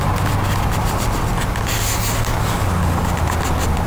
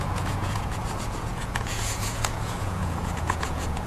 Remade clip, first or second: second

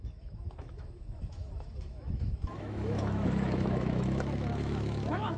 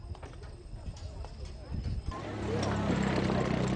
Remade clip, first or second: first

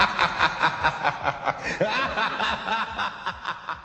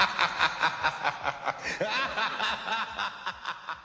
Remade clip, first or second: first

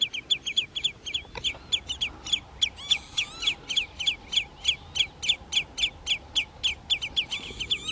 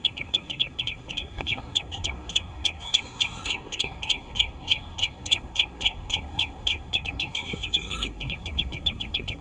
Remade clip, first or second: second